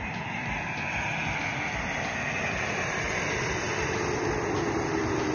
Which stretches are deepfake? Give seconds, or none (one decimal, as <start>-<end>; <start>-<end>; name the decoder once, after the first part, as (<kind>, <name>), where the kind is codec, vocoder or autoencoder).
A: none